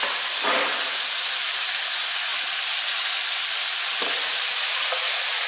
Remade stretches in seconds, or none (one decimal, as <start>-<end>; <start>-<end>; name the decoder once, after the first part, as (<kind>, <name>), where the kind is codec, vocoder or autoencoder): none